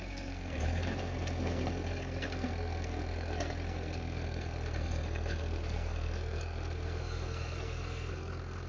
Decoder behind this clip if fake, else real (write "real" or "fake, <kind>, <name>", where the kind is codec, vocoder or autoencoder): fake, codec, SNAC